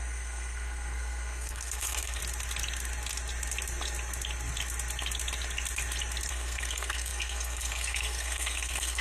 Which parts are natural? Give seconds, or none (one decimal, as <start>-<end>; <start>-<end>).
2.2-6.3